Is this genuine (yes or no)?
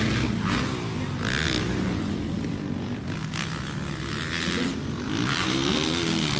yes